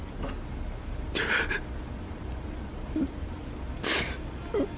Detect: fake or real real